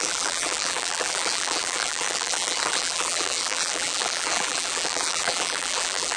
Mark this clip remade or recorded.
remade